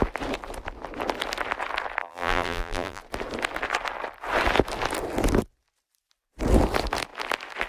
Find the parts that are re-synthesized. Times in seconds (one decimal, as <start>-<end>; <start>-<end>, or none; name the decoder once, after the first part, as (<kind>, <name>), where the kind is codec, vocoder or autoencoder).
2.0-3.0 (vocoder, BigVGAN v2)

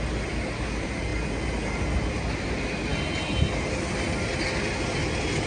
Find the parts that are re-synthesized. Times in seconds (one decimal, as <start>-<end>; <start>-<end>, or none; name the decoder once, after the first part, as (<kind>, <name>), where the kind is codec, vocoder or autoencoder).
none

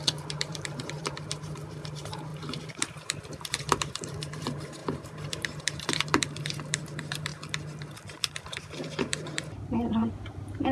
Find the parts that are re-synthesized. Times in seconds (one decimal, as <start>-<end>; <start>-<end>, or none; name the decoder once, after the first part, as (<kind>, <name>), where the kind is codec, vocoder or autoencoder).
0.0-7.3 (vocoder, BigVGAN v2); 8.4-10.7

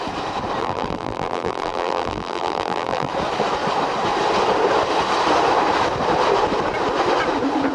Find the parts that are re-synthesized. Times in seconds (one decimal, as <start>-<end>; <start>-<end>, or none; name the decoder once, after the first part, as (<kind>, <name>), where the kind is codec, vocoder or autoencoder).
0.6-3.1 (vocoder, BigVGAN v2)

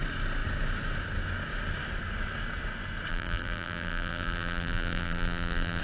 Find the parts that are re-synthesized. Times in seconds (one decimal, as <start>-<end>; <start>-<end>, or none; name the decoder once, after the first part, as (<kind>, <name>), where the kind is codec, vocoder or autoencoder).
3.1-5.8 (vocoder, BigVGAN v2)